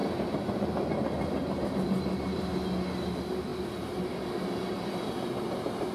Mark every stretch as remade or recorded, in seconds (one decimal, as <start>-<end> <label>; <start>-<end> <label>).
0.0-5.9 recorded